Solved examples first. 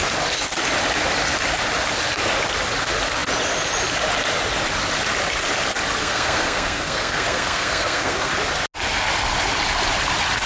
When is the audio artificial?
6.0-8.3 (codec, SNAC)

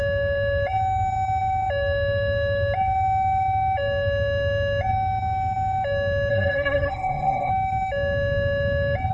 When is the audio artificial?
6.3-7.5 (codec, SNAC)